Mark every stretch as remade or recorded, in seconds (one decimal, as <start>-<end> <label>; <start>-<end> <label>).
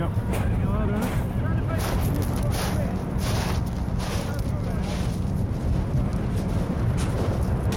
0.0-6.1 recorded; 6.1-7.1 remade; 7.1-7.8 recorded